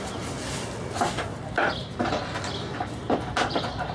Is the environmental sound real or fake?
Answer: real